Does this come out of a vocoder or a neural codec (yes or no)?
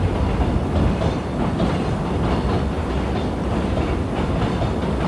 no